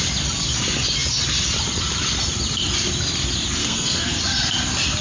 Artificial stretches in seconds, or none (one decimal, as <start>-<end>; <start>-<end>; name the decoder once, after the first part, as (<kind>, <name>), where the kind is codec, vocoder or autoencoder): 3.6-4.2 (codec, SNAC)

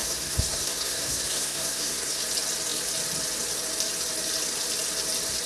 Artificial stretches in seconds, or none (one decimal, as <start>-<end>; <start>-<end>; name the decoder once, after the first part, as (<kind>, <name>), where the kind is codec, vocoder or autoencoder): 0.0-2.2 (codec, SNAC)

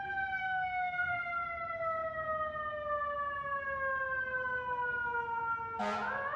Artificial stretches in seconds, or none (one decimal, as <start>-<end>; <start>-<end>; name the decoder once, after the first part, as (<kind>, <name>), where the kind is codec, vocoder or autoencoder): 0.4-1.2 (codec, SNAC)

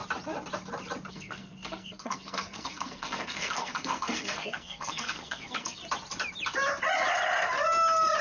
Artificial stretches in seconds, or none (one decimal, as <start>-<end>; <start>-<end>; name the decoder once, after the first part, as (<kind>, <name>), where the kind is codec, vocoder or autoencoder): 1.1-5.8 (codec, SNAC)

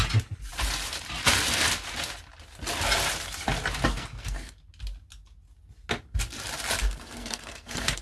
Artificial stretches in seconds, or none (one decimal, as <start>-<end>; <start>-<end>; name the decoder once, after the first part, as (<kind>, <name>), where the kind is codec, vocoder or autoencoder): 3.9-4.5 (codec, SNAC); 6.8-8.0

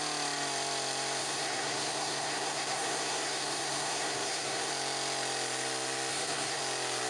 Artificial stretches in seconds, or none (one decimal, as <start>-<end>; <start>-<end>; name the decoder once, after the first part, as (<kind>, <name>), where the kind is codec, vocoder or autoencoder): 1.2-4.7 (codec, SNAC); 6.1-6.6

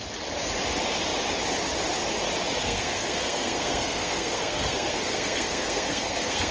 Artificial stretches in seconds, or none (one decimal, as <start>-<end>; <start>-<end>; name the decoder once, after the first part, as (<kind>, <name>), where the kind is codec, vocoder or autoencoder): 2.6-6.5 (codec, SNAC)

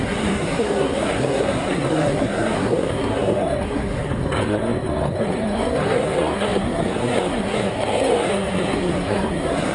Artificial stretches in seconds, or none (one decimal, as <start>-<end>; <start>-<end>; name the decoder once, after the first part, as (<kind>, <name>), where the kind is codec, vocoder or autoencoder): 0.0-9.7 (codec, SNAC)